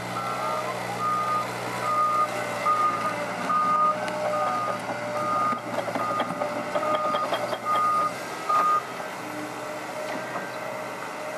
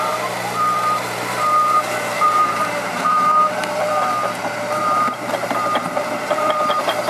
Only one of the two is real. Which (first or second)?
first